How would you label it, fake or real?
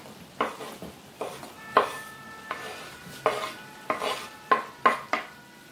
real